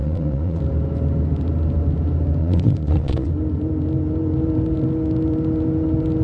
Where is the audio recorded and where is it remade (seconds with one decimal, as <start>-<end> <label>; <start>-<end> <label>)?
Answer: 0.0-0.6 remade; 0.6-2.4 recorded; 2.4-3.3 remade; 3.3-6.2 recorded